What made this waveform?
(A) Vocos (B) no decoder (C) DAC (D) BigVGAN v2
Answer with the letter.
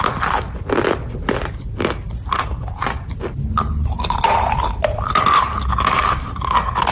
B